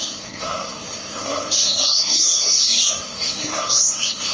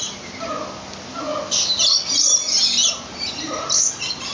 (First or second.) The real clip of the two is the second